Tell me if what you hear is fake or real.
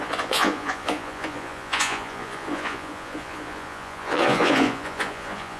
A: fake